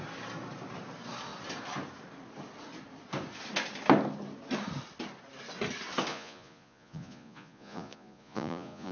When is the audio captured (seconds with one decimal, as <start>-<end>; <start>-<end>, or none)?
0.0-6.1